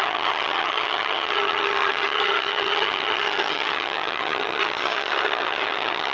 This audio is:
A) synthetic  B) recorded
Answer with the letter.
A